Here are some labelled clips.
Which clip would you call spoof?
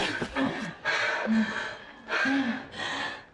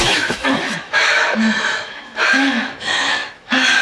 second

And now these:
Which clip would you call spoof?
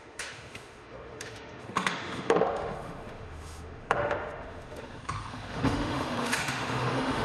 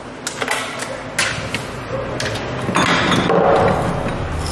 first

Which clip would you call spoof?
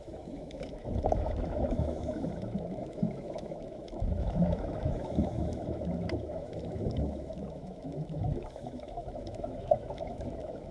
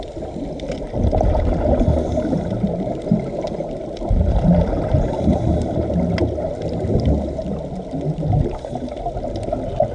first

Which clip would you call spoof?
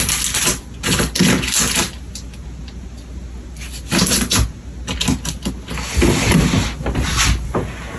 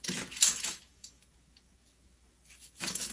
second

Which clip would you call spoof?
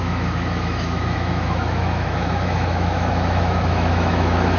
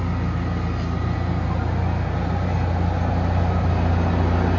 first